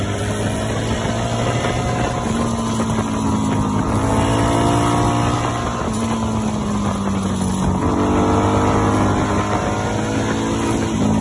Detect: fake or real real